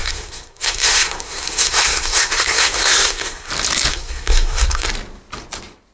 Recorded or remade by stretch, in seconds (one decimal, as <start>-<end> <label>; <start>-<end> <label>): 0.0-3.5 remade; 3.5-3.9 recorded; 3.9-4.9 remade; 4.9-5.9 recorded